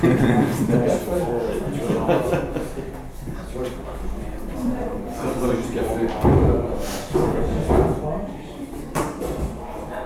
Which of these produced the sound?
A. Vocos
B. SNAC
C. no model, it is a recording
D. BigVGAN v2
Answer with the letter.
D